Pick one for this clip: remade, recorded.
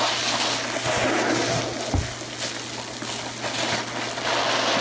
recorded